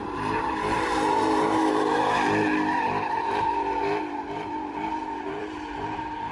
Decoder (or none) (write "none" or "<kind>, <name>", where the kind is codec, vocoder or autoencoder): vocoder, BigVGAN v2